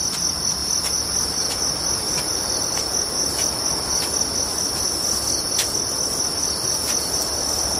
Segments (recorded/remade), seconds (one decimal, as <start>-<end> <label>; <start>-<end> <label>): 0.0-7.8 recorded